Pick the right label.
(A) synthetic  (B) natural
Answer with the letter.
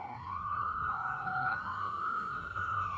A